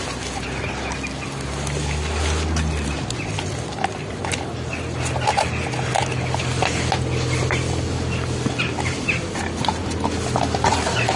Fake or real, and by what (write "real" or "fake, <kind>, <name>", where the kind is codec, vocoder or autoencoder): real